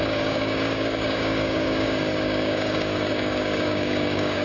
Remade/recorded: remade